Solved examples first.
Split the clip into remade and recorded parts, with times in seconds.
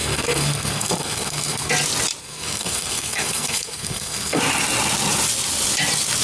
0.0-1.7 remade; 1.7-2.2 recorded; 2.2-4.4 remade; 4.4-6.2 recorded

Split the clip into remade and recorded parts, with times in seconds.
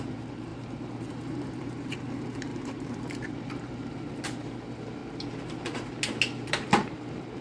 0.0-5.0 remade; 5.0-6.5 recorded; 6.5-7.4 remade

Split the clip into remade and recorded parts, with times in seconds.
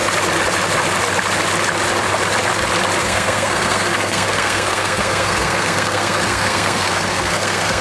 0.0-3.0 recorded; 3.0-7.8 remade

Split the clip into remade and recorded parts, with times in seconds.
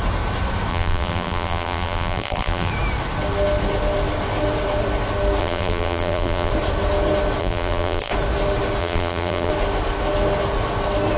0.0-0.7 recorded; 0.7-2.7 remade; 2.7-5.4 recorded; 5.4-6.5 remade; 6.5-7.4 recorded; 7.4-8.1 remade; 8.1-8.8 recorded; 8.8-9.5 remade; 9.5-11.2 recorded